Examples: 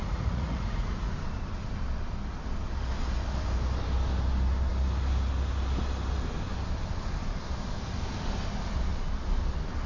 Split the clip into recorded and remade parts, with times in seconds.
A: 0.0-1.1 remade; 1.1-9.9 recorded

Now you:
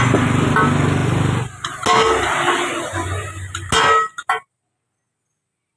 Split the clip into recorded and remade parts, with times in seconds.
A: 0.0-5.8 recorded

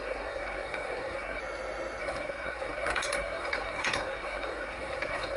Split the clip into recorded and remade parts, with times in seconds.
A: 0.0-1.4 remade; 1.4-2.0 recorded; 2.0-5.4 remade

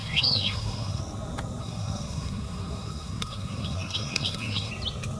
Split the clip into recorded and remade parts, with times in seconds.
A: 0.0-1.0 remade; 1.0-1.6 recorded; 1.6-4.7 remade; 4.7-5.2 recorded

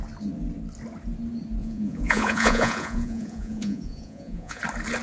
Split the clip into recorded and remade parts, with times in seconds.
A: 0.0-1.6 recorded; 1.6-4.6 remade; 4.6-5.0 recorded

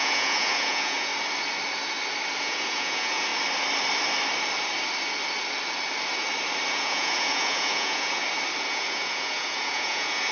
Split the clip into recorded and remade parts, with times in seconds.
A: 0.0-1.1 remade; 1.1-2.4 recorded; 2.4-3.3 remade; 3.3-6.7 recorded; 6.7-8.2 remade; 8.2-8.7 recorded; 8.7-10.3 remade